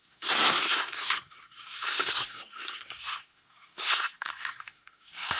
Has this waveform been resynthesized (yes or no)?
yes